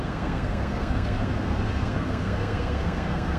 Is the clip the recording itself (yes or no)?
no